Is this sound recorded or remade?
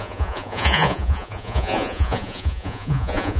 remade